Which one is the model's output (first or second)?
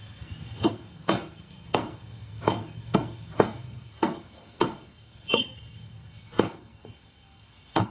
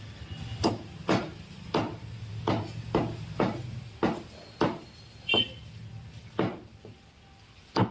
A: first